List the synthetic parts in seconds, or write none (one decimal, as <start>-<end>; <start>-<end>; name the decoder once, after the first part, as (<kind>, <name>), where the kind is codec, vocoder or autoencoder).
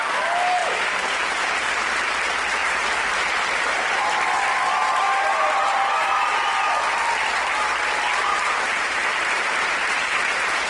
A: 0.6-2.1 (vocoder, BigVGAN v2); 2.6-3.7; 4.8-6.6; 8.3-10.7